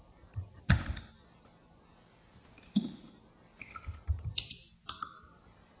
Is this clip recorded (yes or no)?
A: no